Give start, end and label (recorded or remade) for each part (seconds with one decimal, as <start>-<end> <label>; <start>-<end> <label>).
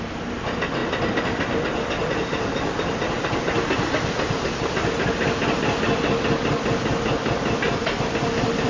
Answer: 0.0-8.7 recorded